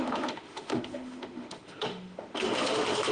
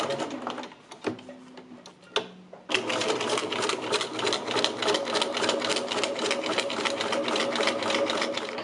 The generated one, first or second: first